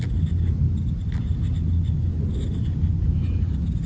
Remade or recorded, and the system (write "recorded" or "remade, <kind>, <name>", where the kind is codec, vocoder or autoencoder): recorded